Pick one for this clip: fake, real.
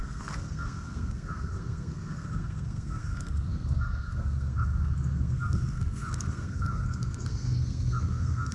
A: fake